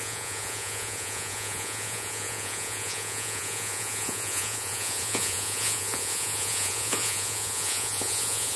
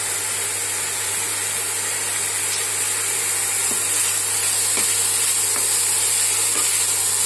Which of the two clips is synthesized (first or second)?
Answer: first